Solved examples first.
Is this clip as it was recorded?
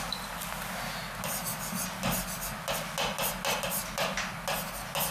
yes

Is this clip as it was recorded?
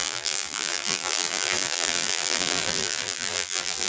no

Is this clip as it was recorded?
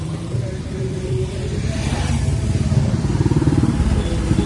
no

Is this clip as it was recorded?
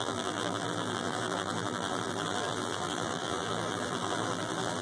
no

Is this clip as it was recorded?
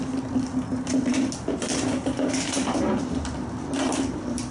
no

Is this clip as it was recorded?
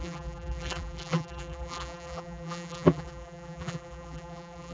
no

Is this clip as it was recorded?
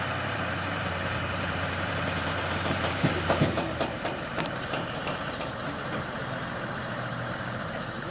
no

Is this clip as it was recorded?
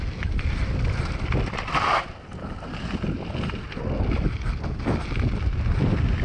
yes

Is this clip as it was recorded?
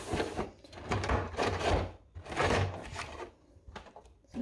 no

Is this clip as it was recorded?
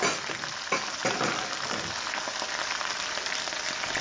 yes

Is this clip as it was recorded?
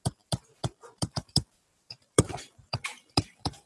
no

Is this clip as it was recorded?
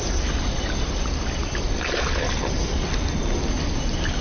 yes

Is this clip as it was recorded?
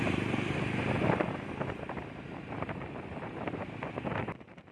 no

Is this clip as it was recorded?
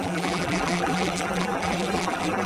no